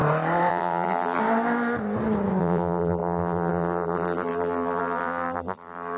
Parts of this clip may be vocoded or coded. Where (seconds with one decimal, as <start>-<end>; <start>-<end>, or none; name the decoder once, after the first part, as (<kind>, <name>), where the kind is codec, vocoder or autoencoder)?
0.5-1.2 (vocoder, BigVGAN v2); 2.4-6.0